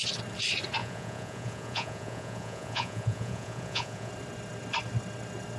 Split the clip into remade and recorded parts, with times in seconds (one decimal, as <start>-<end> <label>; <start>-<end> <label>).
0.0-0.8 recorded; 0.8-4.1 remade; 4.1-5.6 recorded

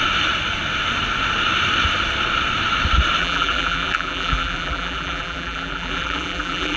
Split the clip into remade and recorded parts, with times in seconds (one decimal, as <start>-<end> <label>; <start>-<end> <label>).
0.0-3.2 recorded; 3.2-6.8 remade

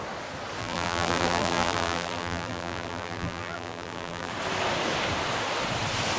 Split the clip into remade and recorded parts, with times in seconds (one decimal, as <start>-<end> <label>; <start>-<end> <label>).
0.0-0.6 recorded; 0.6-4.3 remade; 4.3-6.2 recorded

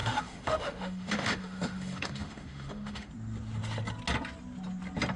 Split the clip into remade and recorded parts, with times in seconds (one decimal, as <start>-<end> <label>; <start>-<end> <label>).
0.0-3.1 remade; 3.1-5.2 recorded

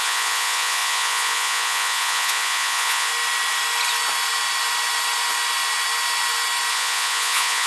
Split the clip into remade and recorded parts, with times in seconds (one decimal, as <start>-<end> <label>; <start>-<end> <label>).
0.0-3.1 remade; 3.1-6.7 recorded; 6.7-7.7 remade

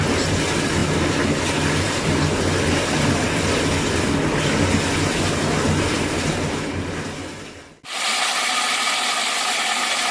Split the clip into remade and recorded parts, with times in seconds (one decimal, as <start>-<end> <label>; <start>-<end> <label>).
0.0-10.1 recorded

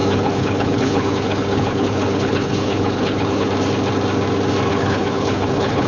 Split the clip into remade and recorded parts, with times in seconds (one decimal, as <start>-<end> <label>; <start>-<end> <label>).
0.0-3.5 remade; 3.5-4.7 recorded; 4.7-5.9 remade

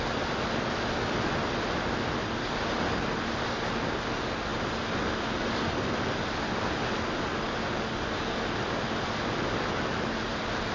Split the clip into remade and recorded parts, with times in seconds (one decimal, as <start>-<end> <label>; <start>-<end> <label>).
0.0-10.7 recorded